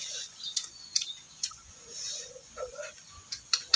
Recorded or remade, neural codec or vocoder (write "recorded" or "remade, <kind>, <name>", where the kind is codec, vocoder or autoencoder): remade, vocoder, Vocos